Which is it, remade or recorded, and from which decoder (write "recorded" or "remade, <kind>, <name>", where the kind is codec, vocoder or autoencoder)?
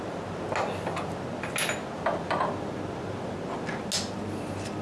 recorded